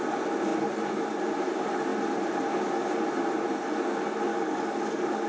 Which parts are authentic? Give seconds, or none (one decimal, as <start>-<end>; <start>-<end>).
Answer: 0.0-4.3